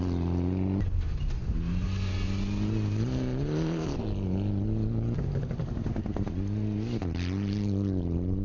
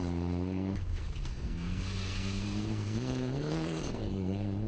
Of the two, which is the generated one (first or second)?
second